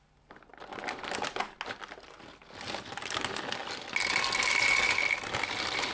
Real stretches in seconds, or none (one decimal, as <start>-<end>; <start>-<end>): 0.0-5.9